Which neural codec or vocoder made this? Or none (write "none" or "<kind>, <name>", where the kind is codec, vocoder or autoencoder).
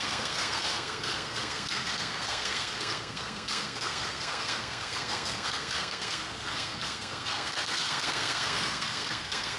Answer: codec, SNAC